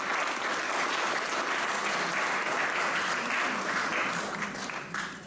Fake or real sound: real